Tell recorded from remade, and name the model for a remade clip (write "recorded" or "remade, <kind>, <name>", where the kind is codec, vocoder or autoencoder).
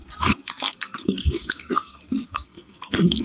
remade, codec, SNAC